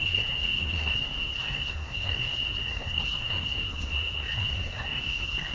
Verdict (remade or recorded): remade